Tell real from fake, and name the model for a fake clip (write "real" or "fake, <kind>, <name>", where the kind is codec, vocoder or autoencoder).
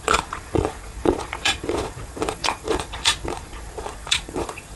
fake, vocoder, Vocos